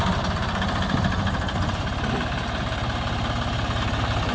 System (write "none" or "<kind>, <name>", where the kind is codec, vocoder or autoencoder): none